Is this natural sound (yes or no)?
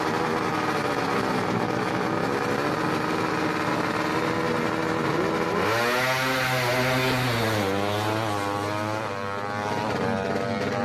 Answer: yes